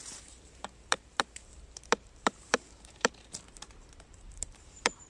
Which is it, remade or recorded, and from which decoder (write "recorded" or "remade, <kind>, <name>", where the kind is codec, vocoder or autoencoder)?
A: remade, vocoder, BigVGAN v2